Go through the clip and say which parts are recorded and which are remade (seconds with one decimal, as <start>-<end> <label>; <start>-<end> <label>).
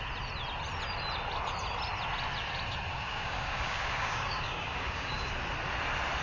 0.0-2.9 recorded; 2.9-5.3 remade; 5.3-6.2 recorded